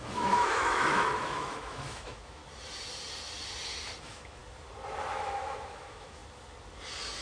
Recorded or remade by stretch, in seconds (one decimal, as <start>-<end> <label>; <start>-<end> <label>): 0.0-2.4 remade; 2.4-4.0 recorded; 4.0-4.4 remade; 4.4-5.1 recorded; 5.1-6.2 remade; 6.2-7.2 recorded